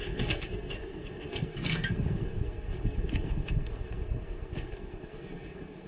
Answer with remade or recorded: remade